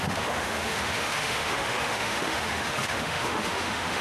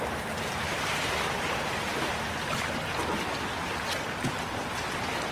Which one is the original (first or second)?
second